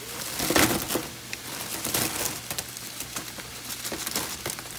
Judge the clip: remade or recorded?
recorded